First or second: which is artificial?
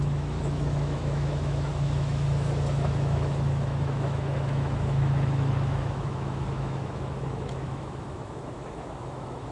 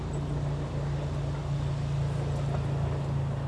first